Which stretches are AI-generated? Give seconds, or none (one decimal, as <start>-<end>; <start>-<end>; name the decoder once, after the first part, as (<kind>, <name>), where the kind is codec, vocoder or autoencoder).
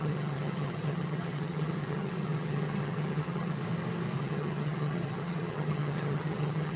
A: 0.0-3.6 (vocoder, HiFi-GAN); 4.2-6.8